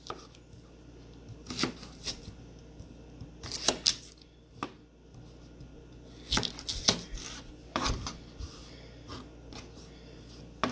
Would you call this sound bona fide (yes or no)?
yes